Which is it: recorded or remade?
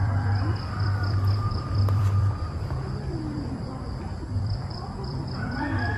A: remade